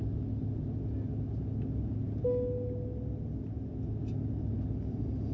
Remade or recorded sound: recorded